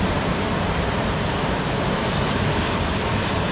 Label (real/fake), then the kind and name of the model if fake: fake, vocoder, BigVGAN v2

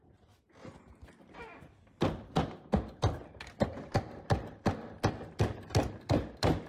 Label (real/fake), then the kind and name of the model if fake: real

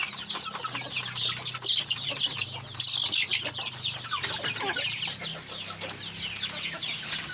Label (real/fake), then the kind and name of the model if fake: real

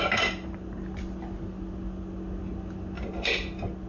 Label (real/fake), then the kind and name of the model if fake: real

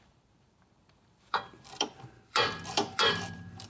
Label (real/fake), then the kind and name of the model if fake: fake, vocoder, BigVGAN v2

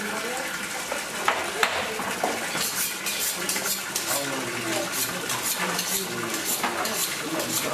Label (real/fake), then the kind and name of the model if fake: real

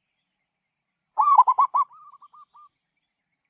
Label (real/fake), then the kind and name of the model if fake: fake, vocoder, BigVGAN v2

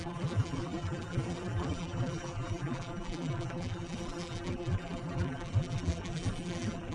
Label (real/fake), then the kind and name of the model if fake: fake, vocoder, BigVGAN v2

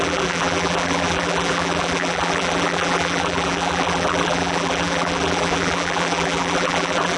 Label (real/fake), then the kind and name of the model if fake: fake, vocoder, BigVGAN v2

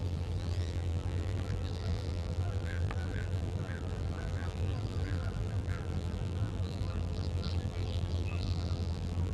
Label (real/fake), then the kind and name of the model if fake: fake, vocoder, BigVGAN v2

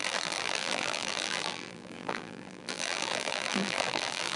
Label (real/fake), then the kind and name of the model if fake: fake, vocoder, BigVGAN v2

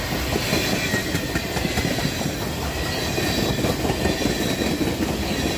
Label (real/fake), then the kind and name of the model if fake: real